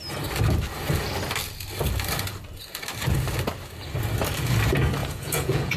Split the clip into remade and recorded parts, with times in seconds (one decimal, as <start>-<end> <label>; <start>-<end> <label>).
0.0-5.0 recorded; 5.0-5.8 remade